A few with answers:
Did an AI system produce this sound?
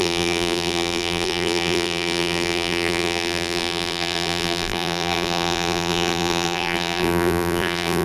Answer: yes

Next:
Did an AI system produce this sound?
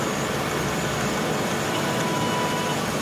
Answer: no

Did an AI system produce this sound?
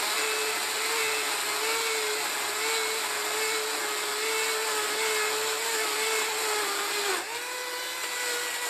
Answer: no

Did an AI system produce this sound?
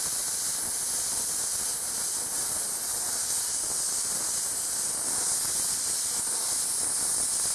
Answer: no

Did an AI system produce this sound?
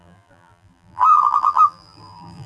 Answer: yes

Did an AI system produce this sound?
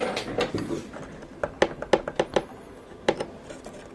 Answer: no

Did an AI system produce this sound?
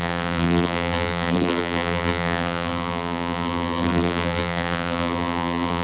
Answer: yes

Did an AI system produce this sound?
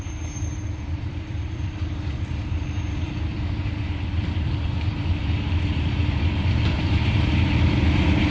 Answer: yes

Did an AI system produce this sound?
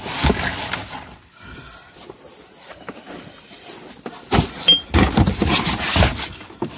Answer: no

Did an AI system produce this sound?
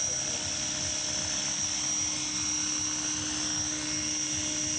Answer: no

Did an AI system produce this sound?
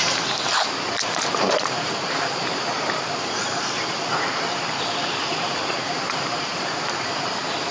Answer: yes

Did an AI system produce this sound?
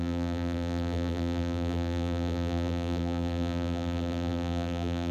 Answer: yes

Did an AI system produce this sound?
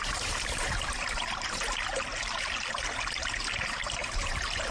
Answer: yes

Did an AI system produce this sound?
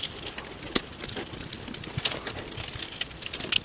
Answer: no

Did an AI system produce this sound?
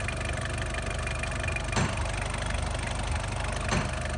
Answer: no